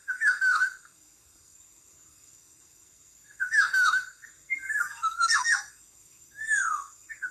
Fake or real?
fake